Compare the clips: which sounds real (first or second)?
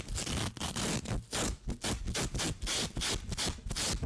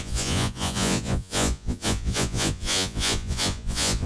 first